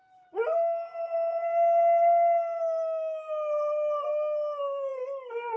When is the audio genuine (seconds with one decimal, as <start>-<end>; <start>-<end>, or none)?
0.0-5.6